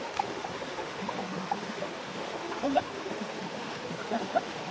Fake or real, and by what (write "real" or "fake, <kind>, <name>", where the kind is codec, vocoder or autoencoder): fake, autoencoder, DAC-VAE